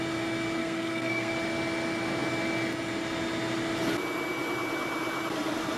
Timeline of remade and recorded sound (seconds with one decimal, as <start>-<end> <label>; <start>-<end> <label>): 0.0-0.6 recorded; 0.6-1.3 remade; 1.3-5.8 recorded